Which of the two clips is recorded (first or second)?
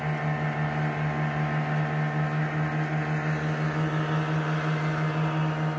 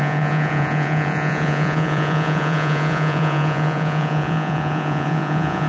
first